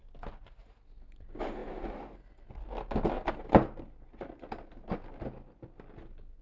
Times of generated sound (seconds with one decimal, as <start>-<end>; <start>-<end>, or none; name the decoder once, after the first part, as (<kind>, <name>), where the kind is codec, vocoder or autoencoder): none